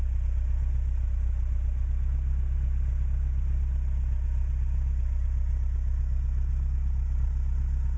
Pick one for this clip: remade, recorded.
recorded